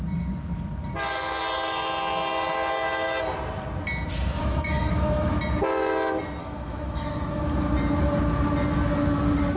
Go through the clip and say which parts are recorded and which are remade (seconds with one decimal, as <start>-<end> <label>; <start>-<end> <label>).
0.0-4.4 recorded; 4.4-5.3 remade; 5.3-6.4 recorded; 6.4-7.4 remade; 7.4-9.6 recorded